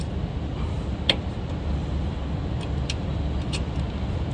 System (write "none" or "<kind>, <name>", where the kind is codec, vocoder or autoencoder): none